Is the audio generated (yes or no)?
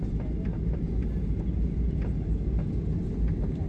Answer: no